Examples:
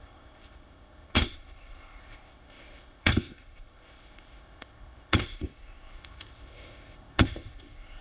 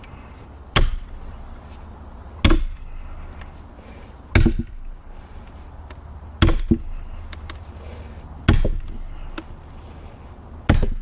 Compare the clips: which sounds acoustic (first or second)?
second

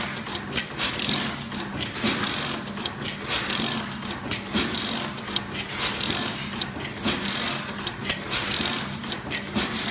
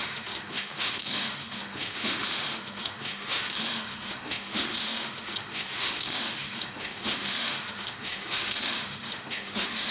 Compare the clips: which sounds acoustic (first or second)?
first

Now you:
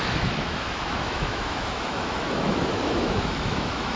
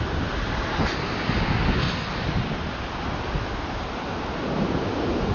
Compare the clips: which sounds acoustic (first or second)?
second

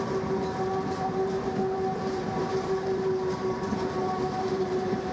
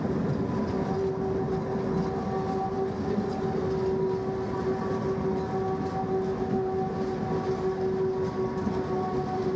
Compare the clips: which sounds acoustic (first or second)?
second